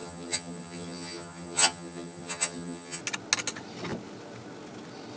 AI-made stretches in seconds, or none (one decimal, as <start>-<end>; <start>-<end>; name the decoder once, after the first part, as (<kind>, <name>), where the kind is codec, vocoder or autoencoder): 0.0-3.0 (vocoder, HiFi-GAN)